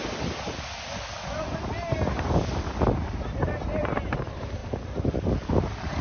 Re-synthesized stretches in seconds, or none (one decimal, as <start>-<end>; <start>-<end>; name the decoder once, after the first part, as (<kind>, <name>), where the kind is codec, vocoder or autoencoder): 2.9-4.6 (vocoder, BigVGAN v2); 5.6-6.0